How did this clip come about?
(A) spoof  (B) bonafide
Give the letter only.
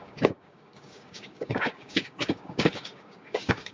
A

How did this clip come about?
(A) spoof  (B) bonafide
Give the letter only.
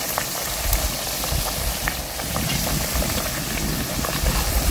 B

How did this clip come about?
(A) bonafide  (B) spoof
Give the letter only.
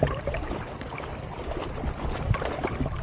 A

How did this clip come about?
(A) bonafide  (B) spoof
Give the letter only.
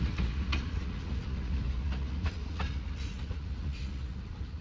B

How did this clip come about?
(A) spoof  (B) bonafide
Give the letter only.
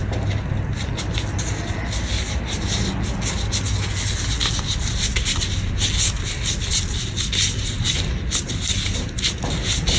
B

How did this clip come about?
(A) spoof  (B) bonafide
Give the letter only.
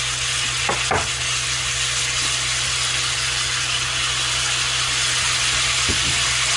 B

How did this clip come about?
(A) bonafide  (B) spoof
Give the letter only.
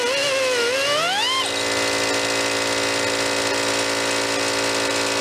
A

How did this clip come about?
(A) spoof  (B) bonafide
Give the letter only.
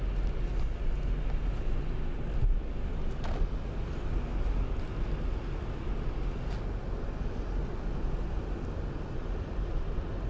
B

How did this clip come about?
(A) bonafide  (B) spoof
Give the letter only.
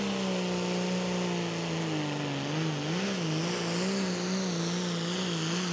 A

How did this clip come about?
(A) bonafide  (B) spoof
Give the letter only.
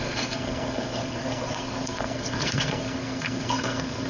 B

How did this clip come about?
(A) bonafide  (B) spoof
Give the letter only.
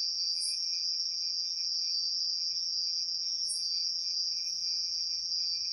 B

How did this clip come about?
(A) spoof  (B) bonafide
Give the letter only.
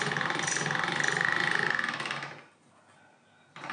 B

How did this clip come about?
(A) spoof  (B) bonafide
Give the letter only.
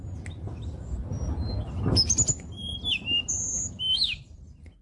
B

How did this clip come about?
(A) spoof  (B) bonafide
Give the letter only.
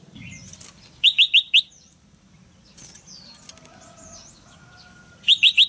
B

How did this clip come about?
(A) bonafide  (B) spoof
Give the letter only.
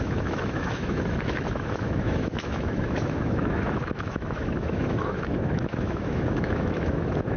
B